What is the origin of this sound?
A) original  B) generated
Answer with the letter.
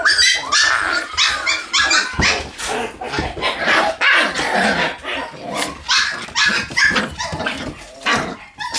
A